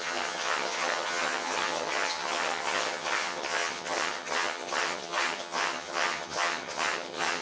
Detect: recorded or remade remade